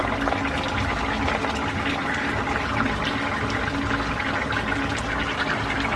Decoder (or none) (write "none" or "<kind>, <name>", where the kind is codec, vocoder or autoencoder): none